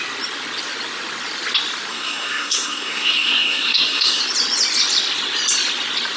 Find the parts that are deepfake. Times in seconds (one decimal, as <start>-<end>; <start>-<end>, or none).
1.9-4.2